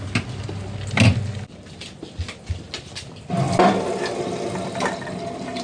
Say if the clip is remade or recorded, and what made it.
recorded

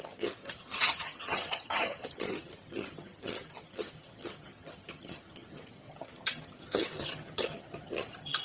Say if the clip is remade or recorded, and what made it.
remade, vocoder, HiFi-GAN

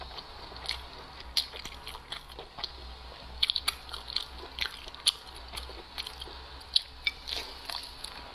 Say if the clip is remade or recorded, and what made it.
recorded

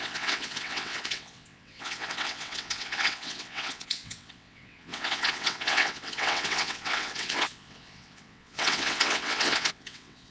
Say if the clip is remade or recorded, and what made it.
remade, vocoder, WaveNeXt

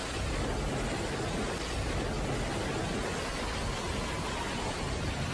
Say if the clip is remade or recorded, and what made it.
recorded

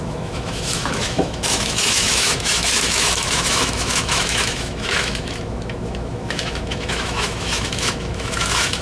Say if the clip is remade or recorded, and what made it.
remade, autoencoder, DAC-VAE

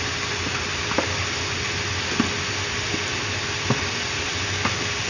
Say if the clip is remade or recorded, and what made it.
recorded